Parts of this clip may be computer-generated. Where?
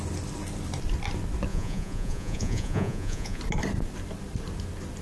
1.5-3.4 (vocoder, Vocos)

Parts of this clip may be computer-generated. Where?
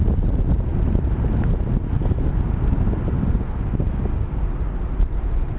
none